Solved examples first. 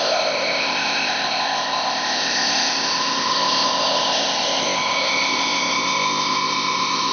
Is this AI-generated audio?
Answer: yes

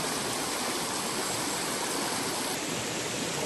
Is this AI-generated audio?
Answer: no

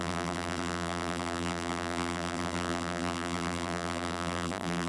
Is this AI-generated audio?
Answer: yes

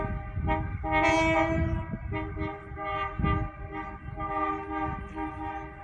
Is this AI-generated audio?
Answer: no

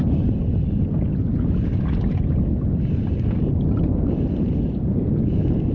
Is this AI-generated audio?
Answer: no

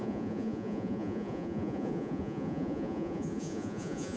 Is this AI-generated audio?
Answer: yes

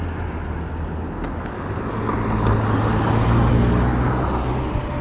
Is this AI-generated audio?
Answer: no